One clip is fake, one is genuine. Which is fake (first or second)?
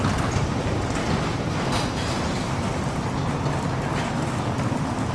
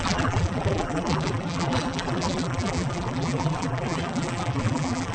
second